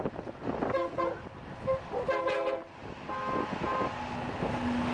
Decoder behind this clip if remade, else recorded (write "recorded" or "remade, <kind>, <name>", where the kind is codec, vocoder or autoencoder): recorded